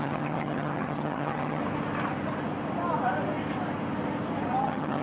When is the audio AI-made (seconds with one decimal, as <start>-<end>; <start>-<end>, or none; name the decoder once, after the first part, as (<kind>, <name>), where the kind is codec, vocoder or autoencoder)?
0.0-1.6 (vocoder, HiFi-GAN); 4.6-5.0

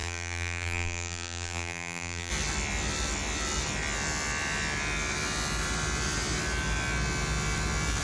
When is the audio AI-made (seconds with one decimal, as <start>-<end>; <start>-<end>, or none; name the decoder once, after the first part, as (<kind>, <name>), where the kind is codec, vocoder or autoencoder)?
0.0-2.3 (vocoder, BigVGAN v2)

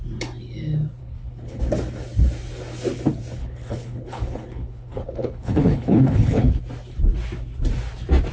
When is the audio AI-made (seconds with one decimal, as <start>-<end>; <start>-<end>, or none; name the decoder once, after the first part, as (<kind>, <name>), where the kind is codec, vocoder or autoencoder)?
1.0-1.6 (codec, HILCodec); 3.4-6.6

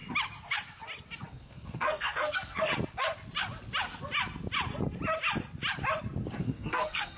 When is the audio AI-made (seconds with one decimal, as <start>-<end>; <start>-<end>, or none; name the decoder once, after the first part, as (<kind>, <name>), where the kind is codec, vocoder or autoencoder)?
1.3-2.7 (codec, SNAC); 6.4-7.2

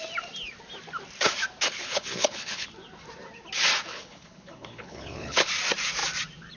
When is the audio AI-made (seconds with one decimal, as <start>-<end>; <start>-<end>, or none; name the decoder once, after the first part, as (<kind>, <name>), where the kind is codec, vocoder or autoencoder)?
1.8-2.7 (codec, HILCodec); 3.9-5.5

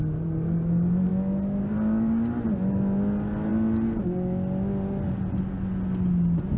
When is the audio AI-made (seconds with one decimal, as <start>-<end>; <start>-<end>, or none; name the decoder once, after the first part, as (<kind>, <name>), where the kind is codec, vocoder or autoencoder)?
none